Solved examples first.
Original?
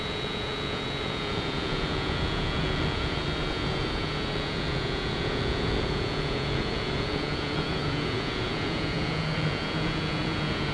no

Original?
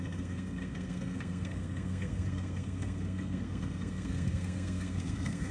no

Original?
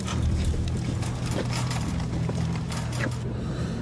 no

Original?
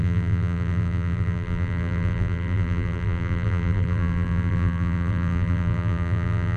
no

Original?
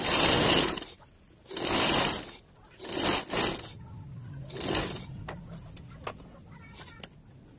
yes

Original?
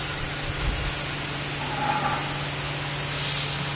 yes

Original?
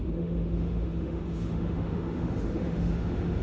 no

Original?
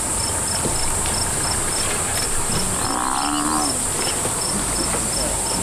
yes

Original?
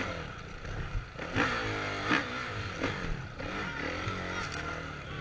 yes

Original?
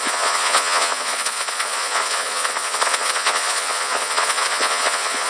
no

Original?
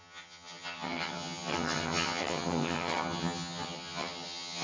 no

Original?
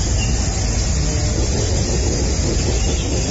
yes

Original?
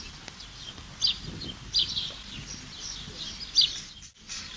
yes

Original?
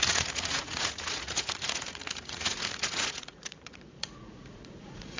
no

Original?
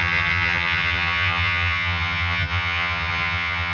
no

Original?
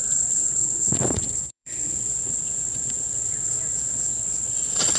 no